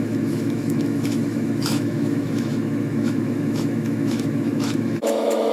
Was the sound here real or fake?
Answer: fake